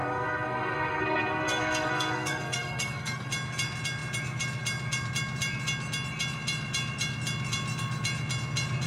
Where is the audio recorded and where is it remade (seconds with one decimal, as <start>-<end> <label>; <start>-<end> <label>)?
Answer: 0.0-3.3 remade; 3.3-8.9 recorded